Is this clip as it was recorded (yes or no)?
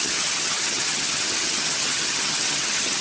no